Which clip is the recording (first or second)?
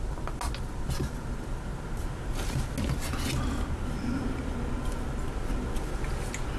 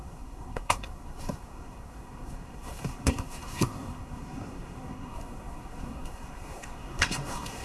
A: first